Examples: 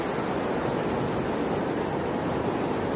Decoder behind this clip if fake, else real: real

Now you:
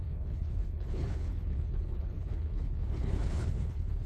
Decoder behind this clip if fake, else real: fake, codec, HILCodec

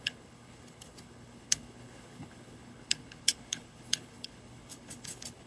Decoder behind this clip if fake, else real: fake, codec, HILCodec